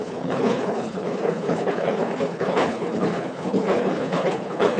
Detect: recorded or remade remade